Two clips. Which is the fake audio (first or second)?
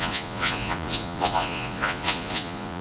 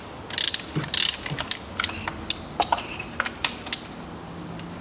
first